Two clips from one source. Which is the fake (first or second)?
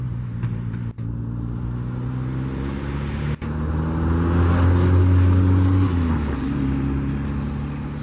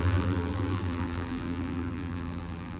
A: second